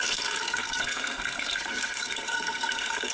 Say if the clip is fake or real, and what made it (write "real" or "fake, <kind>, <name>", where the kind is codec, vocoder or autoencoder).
fake, codec, SNAC